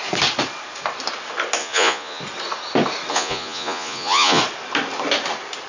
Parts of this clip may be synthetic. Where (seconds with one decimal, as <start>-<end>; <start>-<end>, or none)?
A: 1.6-2.2; 3.1-4.4